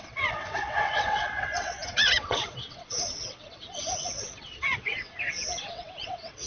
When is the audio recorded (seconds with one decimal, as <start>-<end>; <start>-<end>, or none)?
none